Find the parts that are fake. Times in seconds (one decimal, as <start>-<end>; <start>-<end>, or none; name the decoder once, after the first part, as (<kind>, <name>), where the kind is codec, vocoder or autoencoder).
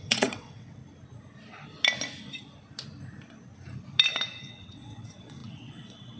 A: 0.0-0.8 (vocoder, WaveNeXt); 4.4-6.2